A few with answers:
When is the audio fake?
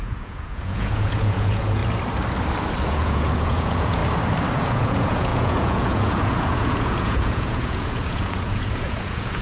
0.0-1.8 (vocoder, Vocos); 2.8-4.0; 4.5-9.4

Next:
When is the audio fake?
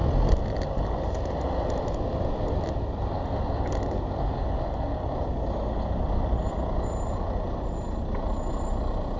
none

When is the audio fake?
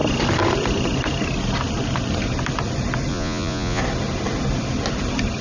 3.1-3.8 (vocoder, Vocos)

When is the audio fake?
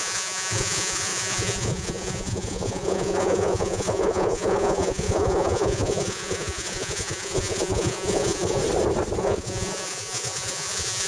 0.0-8.6 (vocoder, Vocos); 9.2-11.1